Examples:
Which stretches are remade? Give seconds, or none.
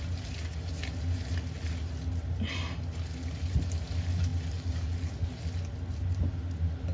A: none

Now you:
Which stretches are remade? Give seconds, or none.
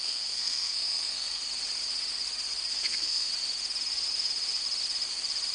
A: 0.0-1.4 (codec, SNAC); 2.8-3.3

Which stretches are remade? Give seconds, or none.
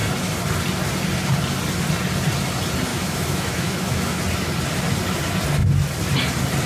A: 2.9-4.2 (autoencoder, DAC-VAE)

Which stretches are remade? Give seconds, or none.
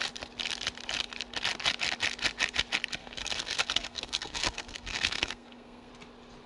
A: 3.0-5.9 (codec, SNAC)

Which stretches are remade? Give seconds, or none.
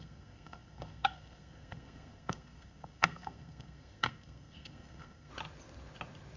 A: 0.0-5.3 (codec, SNAC)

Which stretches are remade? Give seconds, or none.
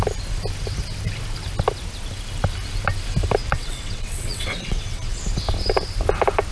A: 3.4-5.2 (vocoder, WaveNeXt)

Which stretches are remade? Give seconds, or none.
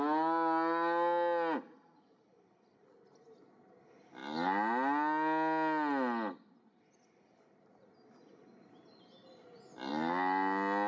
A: none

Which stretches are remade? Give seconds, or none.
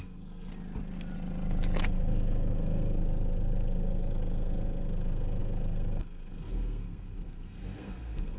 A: 0.0-0.5 (codec, SNAC); 1.8-8.4